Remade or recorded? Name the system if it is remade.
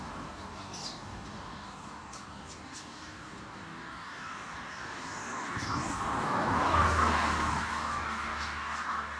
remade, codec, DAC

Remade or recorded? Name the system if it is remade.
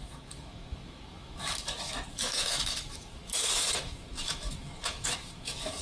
remade, autoencoder, DAC-VAE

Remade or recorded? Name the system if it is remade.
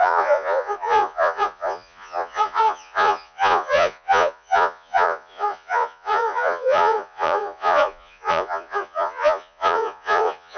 remade, vocoder, Vocos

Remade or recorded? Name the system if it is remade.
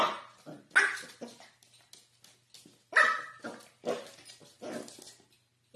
recorded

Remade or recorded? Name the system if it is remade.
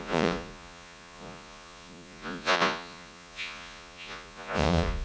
remade, vocoder, Vocos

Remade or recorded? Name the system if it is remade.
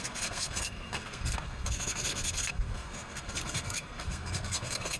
remade, codec, SNAC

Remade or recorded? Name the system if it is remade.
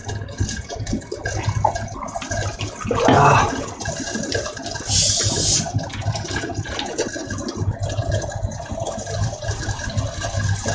recorded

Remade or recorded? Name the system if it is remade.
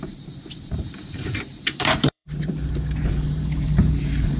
remade, vocoder, BigVGAN v2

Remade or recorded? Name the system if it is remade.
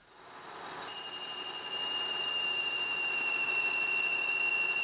recorded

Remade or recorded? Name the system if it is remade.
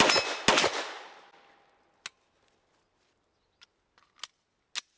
recorded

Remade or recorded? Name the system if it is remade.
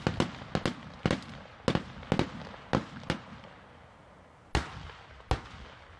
recorded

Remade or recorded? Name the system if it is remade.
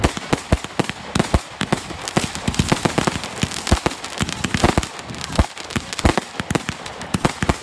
recorded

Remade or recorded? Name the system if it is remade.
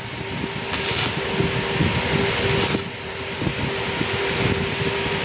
recorded